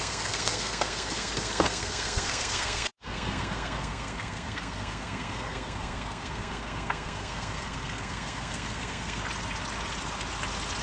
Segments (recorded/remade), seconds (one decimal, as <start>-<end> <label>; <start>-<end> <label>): 0.0-9.2 remade; 9.2-10.8 recorded